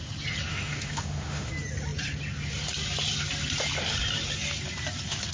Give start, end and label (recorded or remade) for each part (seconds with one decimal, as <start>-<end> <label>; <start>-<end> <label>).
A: 0.0-0.5 recorded; 0.5-1.5 remade; 1.5-5.3 recorded